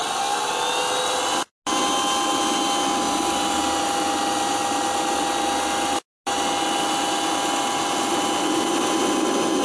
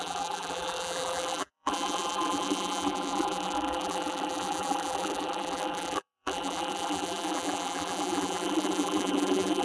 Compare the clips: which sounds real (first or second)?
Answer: first